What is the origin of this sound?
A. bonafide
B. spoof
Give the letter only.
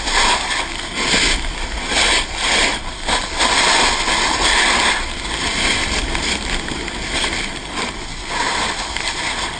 A